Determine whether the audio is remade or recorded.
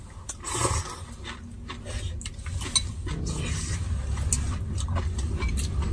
recorded